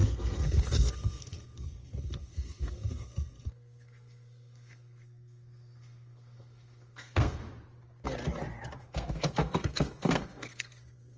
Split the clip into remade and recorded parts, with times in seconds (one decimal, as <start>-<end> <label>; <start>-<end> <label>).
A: 0.0-7.4 remade; 7.4-8.8 recorded; 8.8-11.2 remade